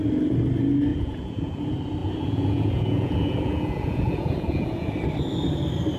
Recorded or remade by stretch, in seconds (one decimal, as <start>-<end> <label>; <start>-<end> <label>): 0.0-0.9 recorded; 0.9-1.6 remade; 1.6-2.0 recorded; 2.0-4.9 remade; 4.9-6.0 recorded